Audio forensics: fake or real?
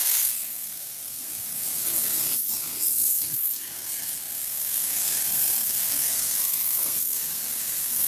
fake